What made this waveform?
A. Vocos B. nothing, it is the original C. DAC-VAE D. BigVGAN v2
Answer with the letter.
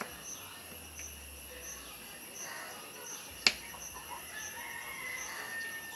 B